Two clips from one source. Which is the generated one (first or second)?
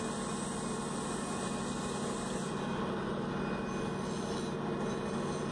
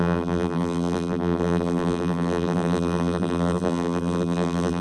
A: second